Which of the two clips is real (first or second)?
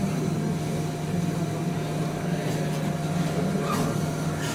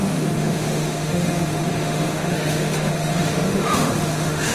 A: first